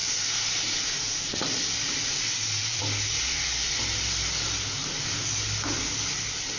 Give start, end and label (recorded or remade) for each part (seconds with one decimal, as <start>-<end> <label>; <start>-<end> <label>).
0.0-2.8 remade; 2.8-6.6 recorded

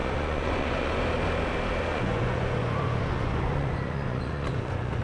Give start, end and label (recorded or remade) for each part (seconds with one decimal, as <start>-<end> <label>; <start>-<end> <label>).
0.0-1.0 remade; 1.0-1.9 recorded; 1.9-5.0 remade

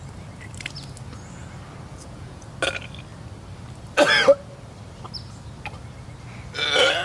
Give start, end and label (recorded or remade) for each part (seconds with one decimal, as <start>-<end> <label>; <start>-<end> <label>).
0.0-1.9 recorded; 1.9-2.5 remade; 2.5-7.0 recorded

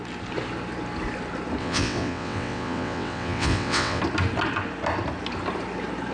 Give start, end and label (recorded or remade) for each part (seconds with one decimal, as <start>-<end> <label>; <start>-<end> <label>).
0.0-1.6 recorded; 1.6-4.0 remade; 4.0-6.1 recorded

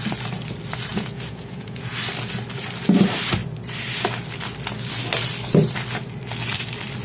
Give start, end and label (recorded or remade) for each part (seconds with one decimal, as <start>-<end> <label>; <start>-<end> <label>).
0.0-0.9 recorded; 0.9-1.9 remade; 1.9-7.0 recorded

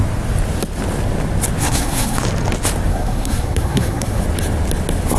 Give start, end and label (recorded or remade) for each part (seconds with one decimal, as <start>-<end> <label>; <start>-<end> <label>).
0.0-1.6 recorded; 1.6-2.2 remade; 2.2-2.9 recorded; 2.9-4.2 remade; 4.2-5.2 recorded

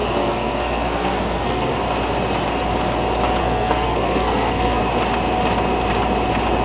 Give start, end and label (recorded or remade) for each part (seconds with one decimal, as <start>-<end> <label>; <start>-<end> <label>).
0.0-1.7 remade; 1.7-3.4 recorded; 3.4-4.8 remade; 4.8-6.6 recorded

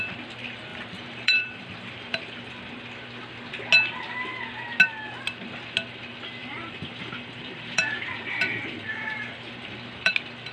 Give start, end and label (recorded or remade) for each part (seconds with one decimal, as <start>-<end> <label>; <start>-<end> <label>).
0.0-0.7 recorded; 0.7-2.5 remade; 2.5-6.4 recorded; 6.4-10.1 remade; 10.1-10.5 recorded